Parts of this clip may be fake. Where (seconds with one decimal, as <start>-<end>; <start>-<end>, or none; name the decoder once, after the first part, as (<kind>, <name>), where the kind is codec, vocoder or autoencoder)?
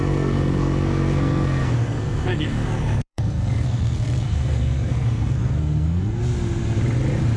0.0-6.2 (codec, SNAC)